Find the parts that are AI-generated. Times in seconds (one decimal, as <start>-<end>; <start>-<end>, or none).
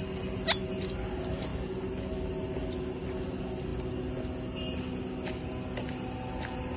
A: none